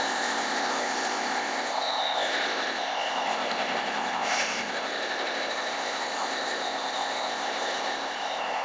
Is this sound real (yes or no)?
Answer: no